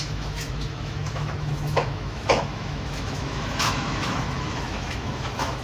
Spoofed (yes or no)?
yes